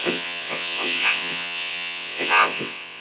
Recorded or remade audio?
remade